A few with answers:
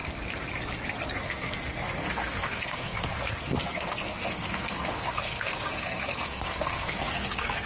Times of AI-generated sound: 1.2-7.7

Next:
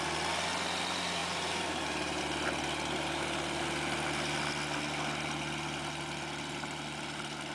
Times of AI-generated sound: 1.2-2.2